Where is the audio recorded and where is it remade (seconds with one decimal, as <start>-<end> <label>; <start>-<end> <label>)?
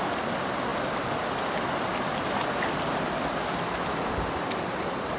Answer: 0.0-5.2 recorded